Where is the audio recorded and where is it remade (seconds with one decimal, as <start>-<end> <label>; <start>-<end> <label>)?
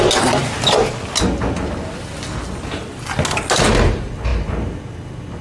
0.0-5.4 recorded